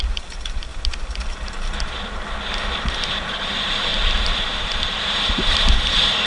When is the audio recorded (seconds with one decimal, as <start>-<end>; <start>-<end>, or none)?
0.7-2.8

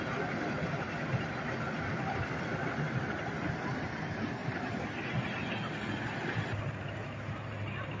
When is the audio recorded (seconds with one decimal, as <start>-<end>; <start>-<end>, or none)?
0.0-8.0

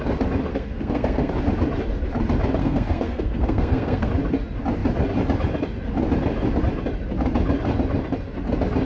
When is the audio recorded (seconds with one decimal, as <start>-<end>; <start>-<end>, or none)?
0.0-0.5; 1.3-2.6; 4.1-8.8

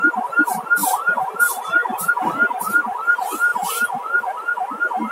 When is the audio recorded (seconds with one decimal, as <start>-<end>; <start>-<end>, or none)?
0.0-0.8; 2.1-5.1

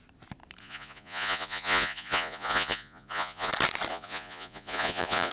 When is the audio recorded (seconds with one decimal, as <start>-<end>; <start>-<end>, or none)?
0.0-0.6; 3.5-3.9

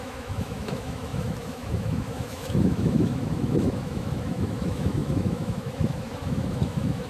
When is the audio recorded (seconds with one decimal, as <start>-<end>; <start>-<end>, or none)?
none

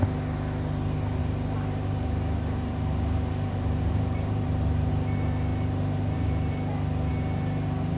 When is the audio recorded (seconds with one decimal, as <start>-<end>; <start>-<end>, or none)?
0.0-1.2; 4.9-5.5; 6.5-7.1